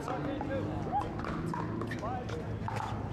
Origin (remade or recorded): recorded